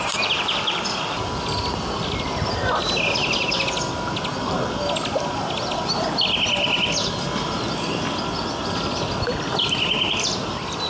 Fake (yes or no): no